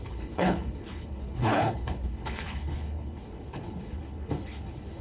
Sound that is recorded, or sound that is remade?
remade